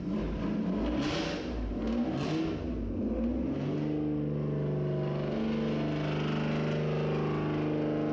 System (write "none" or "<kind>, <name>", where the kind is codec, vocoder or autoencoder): none